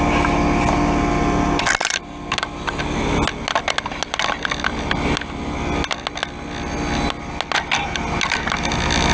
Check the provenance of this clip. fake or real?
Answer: real